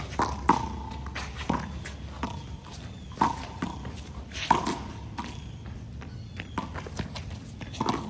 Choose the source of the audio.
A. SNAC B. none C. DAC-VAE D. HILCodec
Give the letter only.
B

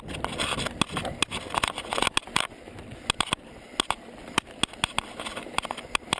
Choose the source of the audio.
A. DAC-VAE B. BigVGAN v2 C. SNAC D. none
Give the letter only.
D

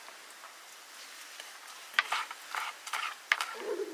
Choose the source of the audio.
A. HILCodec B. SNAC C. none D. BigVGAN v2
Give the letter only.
C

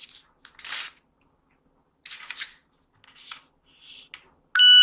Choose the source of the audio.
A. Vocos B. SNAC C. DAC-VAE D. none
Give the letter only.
D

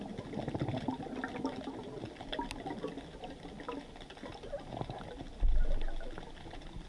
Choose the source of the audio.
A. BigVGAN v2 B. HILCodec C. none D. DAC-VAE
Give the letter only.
C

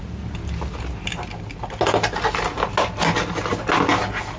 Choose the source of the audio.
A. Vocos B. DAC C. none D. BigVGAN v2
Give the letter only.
C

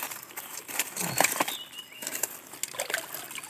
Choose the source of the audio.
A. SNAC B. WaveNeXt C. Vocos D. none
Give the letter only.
D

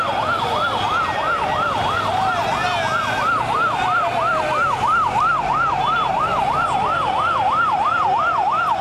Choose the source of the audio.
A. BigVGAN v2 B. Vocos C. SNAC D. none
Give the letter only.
D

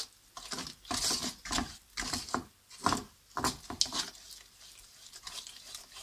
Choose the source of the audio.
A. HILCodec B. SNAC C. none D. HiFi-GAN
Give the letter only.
C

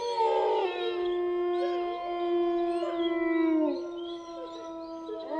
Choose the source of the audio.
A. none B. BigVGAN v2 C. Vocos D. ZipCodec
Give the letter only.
A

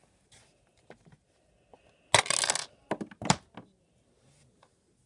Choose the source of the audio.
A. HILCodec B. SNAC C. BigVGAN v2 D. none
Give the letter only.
D